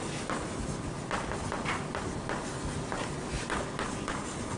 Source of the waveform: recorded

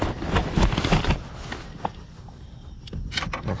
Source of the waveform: recorded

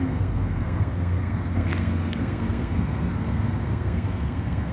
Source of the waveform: remade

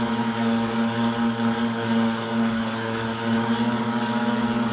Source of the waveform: remade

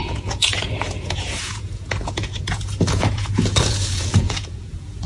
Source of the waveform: remade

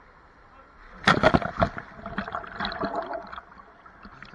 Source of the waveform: recorded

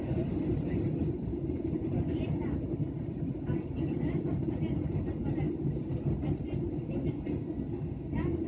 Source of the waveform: recorded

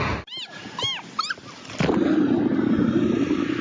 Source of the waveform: recorded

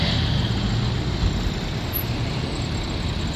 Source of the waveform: recorded